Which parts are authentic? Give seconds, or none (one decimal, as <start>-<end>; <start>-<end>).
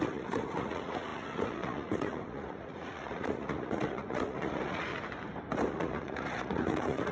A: 4.9-5.7